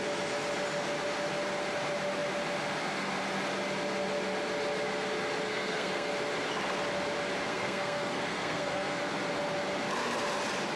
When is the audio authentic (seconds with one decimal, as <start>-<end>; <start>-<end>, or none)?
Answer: 0.0-5.5; 6.1-7.5; 9.0-10.8